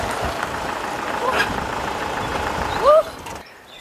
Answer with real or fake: fake